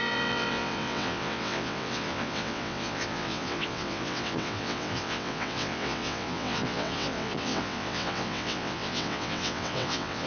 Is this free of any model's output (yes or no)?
no